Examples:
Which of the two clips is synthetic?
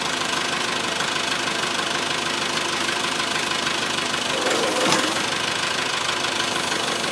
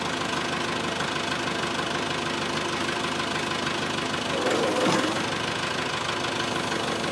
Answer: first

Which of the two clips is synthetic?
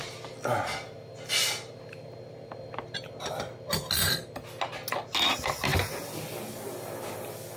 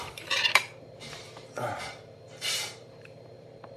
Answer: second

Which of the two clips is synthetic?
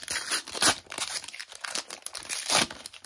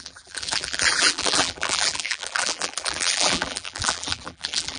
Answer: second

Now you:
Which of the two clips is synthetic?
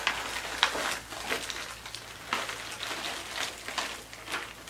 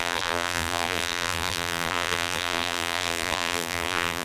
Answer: second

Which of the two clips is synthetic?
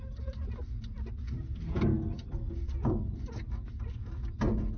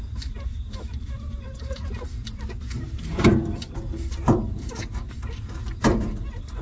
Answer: second